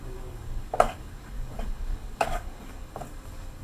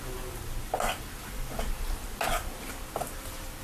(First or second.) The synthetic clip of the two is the first